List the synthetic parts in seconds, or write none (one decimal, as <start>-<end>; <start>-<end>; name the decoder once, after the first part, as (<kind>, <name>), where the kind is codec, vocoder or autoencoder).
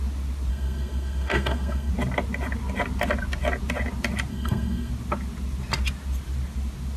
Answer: 0.5-1.9 (codec, SNAC); 4.3-4.9